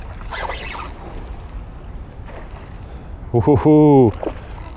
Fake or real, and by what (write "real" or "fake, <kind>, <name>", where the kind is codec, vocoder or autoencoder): real